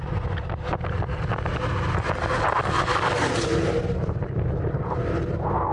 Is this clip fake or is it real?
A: real